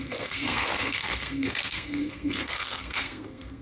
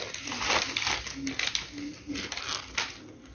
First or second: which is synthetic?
first